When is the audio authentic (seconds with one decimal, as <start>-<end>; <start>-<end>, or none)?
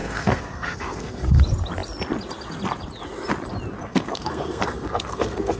1.4-3.9